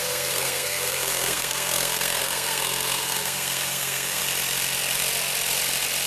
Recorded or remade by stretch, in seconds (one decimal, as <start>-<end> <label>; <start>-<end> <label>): 0.0-4.2 remade; 4.2-6.1 recorded